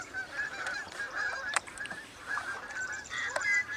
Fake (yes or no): yes